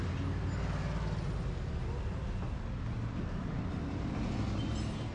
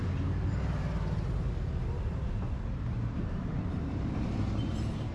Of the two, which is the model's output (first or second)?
second